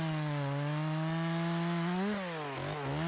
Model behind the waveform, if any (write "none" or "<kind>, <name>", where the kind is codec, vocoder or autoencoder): none